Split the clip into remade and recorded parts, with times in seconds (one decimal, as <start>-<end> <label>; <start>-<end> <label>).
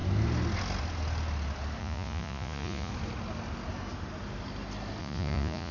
0.0-1.8 recorded; 1.8-2.9 remade; 2.9-5.0 recorded; 5.0-5.7 remade